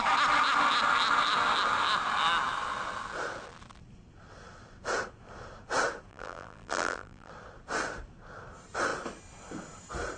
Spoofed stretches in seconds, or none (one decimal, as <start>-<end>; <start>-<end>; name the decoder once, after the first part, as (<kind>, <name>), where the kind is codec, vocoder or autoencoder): 6.1-7.3 (vocoder, BigVGAN v2)